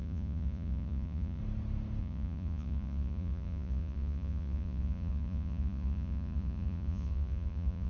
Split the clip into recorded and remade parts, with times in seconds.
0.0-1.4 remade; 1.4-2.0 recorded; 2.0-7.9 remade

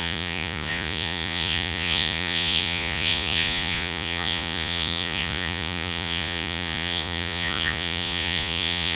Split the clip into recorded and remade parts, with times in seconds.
0.0-9.0 remade